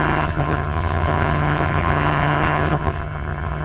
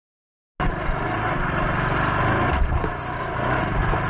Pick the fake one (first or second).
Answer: first